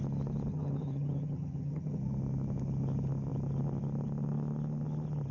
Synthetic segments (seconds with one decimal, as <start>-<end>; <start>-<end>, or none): 0.5-2.0